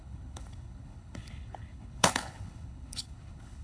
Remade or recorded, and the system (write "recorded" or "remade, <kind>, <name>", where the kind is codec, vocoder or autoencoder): remade, codec, HILCodec